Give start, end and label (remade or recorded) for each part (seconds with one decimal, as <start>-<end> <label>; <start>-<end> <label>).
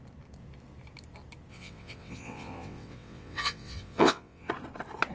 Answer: 0.0-1.5 recorded; 1.5-4.5 remade; 4.5-5.1 recorded